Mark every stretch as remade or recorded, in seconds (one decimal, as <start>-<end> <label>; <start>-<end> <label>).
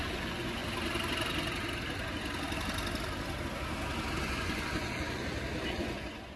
0.0-0.6 remade; 0.6-4.2 recorded; 4.2-5.2 remade; 5.2-5.7 recorded; 5.7-6.4 remade